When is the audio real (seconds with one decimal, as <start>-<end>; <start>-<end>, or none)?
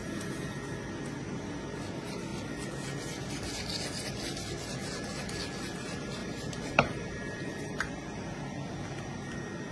0.5-6.2; 8.3-9.7